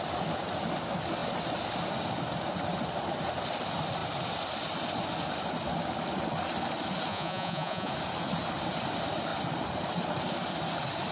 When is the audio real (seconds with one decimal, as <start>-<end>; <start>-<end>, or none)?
0.0-7.1; 7.9-11.1